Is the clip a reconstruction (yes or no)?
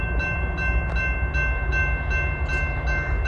no